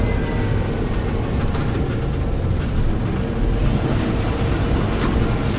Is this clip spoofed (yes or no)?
no